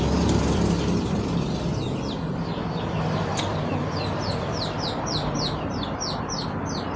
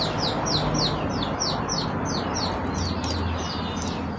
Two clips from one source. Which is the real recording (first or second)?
second